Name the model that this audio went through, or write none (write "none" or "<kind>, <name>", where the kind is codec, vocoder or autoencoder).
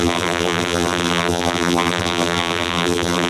vocoder, BigVGAN v2